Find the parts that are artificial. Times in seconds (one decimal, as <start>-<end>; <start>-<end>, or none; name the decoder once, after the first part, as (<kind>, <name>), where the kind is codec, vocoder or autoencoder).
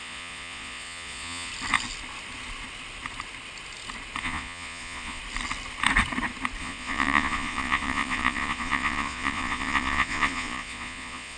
0.0-1.5 (vocoder, Vocos); 4.2-5.2; 6.6-11.4